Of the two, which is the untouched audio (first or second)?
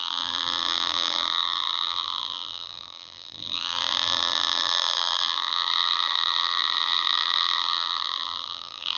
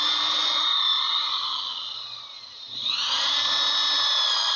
second